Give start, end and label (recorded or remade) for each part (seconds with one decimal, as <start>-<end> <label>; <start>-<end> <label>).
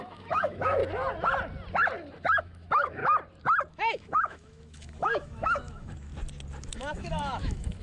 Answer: 0.0-0.8 remade; 0.8-2.4 recorded; 2.4-3.0 remade; 3.0-3.7 recorded; 3.7-6.1 remade; 6.1-6.7 recorded; 6.7-7.8 remade